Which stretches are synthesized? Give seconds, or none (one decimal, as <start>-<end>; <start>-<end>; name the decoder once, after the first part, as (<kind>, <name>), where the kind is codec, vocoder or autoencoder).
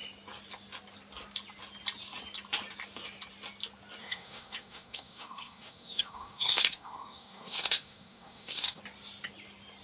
4.0-8.8 (codec, SNAC)